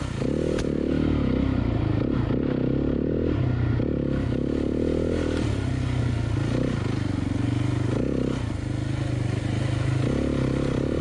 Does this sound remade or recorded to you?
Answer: recorded